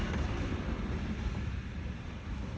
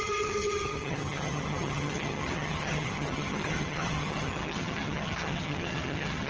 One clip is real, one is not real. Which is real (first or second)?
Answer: first